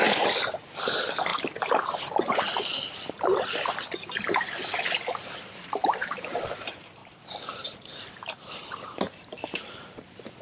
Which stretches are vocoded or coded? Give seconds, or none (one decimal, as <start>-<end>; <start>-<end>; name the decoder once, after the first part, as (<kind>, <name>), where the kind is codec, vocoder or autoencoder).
5.8-6.4 (vocoder, BigVGAN v2); 7.0-9.9